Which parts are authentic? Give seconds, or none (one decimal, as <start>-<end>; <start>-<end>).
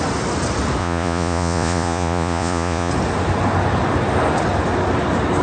0.0-0.8; 2.9-5.4